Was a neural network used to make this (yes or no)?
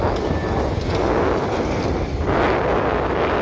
no